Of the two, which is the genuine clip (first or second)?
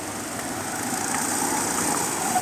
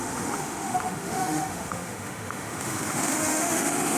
first